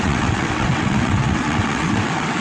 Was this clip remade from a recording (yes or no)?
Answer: yes